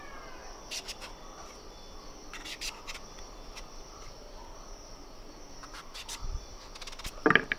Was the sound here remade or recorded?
recorded